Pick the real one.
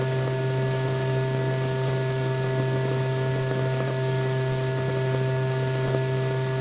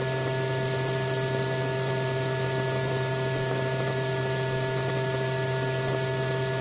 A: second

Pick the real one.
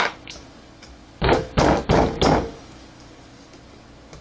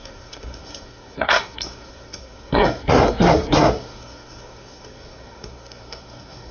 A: first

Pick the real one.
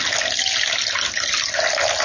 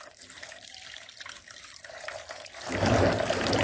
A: first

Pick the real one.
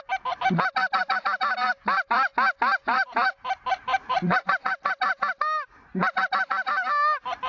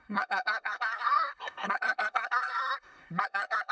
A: first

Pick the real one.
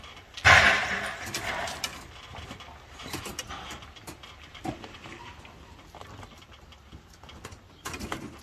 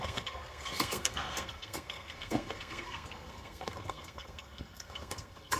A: first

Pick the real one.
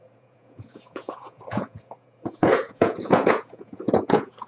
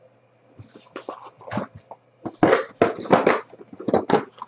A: second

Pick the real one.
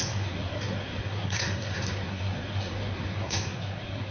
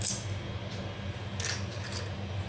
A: second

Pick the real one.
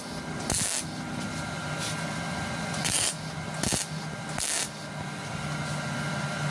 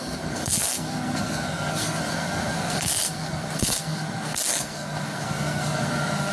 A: first